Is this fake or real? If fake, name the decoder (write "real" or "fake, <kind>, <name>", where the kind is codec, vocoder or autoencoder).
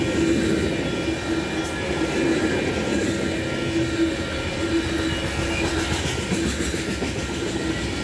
real